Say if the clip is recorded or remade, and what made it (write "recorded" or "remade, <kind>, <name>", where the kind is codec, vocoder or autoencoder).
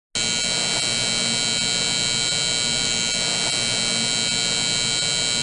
recorded